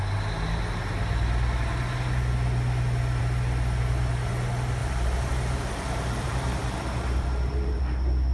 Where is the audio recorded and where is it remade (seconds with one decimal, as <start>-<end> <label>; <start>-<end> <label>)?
0.0-4.8 recorded; 4.8-7.8 remade; 7.8-8.3 recorded